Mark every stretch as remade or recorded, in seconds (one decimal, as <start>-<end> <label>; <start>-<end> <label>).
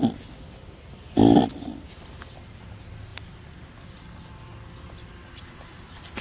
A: 0.0-6.2 recorded